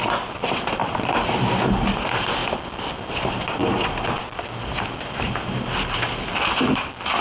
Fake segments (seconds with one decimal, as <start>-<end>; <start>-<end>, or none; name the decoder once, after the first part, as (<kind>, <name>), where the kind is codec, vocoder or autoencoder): 0.8-1.5 (vocoder, BigVGAN v2)